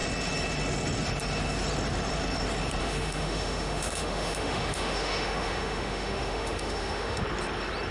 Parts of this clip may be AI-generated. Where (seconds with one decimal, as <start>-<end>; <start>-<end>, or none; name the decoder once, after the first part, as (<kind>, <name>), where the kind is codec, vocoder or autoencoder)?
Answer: 2.8-7.2 (autoencoder, DAC-VAE)